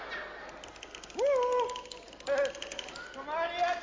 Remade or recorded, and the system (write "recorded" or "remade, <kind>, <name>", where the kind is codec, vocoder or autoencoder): recorded